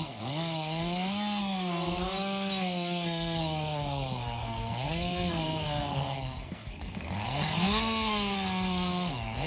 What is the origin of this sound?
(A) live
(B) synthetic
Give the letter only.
B